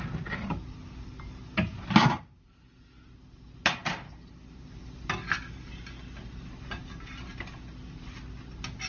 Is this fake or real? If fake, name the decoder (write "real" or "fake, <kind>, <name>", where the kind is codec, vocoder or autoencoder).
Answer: real